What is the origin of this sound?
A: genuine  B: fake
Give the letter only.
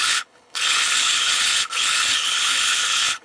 B